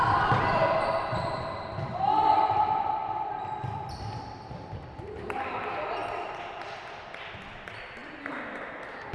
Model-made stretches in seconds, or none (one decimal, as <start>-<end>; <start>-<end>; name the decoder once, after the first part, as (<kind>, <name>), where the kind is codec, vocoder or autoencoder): 0.0-9.1 (vocoder, BigVGAN v2)